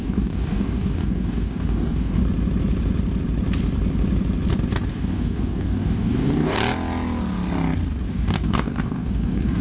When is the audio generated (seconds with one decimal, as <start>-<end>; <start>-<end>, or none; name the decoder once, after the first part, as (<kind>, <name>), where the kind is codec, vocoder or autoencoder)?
0.0-2.2 (codec, DAC); 4.9-6.6; 8.1-9.6